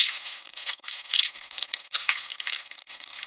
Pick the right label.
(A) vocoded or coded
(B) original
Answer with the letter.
A